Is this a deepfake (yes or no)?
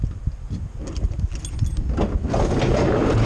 no